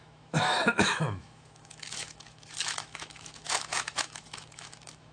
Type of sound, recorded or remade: remade